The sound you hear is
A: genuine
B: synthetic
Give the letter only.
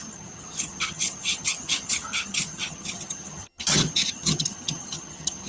B